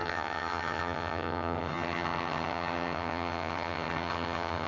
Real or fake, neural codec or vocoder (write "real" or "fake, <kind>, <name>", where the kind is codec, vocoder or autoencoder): fake, vocoder, HiFi-GAN